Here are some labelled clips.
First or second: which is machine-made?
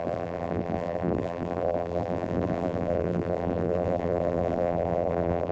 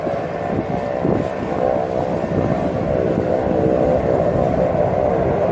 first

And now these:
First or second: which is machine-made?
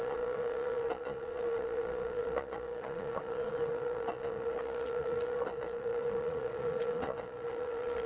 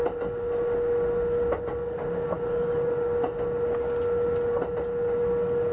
first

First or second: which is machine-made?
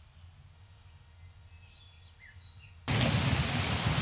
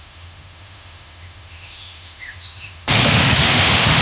second